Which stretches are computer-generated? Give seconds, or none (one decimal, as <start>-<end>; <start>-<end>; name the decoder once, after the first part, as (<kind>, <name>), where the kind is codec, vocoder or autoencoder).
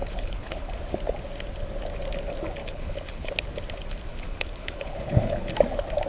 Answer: 0.0-0.7 (codec, HILCodec); 2.6-3.3; 4.1-5.5